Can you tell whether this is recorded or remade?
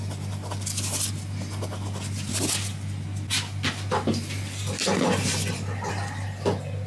recorded